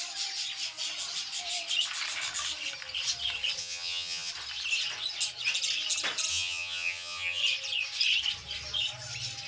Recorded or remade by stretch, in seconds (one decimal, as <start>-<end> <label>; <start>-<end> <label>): 0.0-3.6 recorded; 3.6-4.3 remade; 4.3-6.3 recorded; 6.3-7.4 remade; 7.4-9.5 recorded

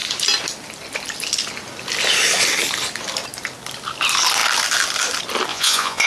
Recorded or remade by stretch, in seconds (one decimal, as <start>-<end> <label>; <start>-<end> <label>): 0.0-5.5 recorded; 5.5-6.1 remade

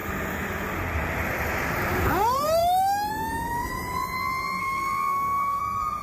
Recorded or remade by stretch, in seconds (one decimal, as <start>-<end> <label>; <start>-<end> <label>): 0.0-4.6 recorded; 4.6-5.6 remade; 5.6-6.0 recorded